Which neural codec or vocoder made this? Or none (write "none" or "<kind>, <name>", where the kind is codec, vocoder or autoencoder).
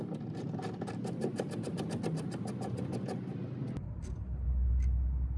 none